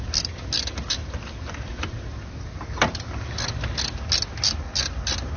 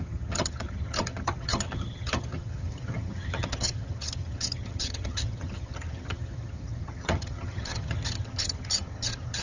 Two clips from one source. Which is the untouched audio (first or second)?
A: first